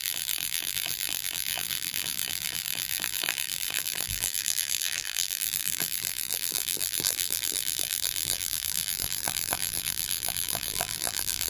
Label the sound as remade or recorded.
remade